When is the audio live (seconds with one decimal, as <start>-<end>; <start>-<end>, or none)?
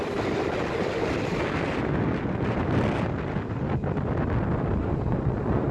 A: 0.0-4.8